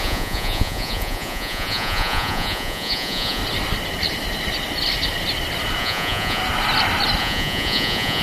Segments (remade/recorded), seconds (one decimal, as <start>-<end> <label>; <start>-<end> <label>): 0.0-3.4 remade; 3.4-5.8 recorded; 5.8-6.4 remade; 6.4-7.2 recorded; 7.2-8.2 remade

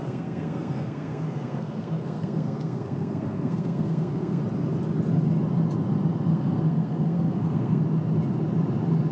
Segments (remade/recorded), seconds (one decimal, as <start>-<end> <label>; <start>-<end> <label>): 0.0-4.4 remade; 4.4-6.3 recorded; 6.3-7.8 remade; 7.8-9.1 recorded

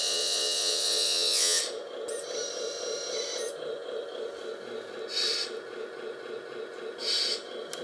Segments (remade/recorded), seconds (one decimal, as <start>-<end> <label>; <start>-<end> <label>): 0.0-1.6 remade; 1.6-7.8 recorded

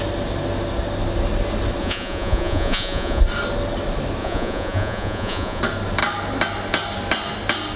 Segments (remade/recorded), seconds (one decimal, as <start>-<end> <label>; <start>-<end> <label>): 0.0-1.8 recorded; 1.8-3.2 remade; 3.2-4.2 recorded; 4.2-5.6 remade; 5.6-7.8 recorded

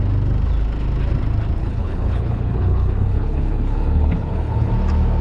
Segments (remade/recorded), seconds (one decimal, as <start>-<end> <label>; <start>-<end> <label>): 0.0-1.6 recorded; 1.6-4.7 remade; 4.7-5.2 recorded

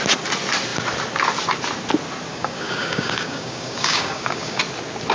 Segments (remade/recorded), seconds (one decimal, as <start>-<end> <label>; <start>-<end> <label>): 0.0-2.3 recorded; 2.3-4.6 remade; 4.6-5.1 recorded